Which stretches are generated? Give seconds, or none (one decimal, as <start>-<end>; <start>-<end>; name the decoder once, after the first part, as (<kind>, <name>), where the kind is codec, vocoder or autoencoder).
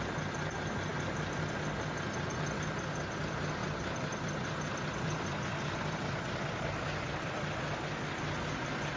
0.9-1.4 (vocoder, BigVGAN v2); 3.6-7.3